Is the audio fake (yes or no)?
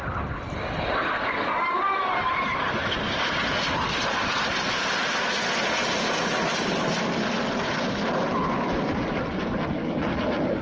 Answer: no